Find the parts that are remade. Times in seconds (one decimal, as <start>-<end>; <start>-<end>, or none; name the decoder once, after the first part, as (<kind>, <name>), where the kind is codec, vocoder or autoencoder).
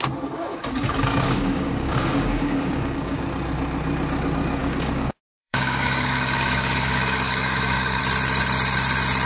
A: 0.5-3.2 (codec, DAC); 4.6-8.0